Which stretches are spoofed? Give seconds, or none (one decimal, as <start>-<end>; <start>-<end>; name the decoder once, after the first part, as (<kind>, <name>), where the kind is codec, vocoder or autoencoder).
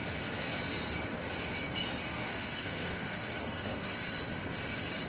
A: 2.1-3.9 (codec, SNAC)